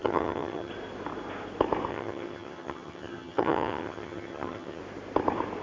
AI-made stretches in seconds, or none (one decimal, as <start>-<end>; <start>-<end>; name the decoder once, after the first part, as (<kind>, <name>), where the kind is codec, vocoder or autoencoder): 0.0-0.7 (vocoder, HiFi-GAN); 1.9-4.8